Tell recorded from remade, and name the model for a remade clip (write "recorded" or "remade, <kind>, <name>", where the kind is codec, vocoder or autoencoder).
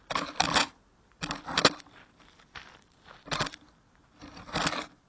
recorded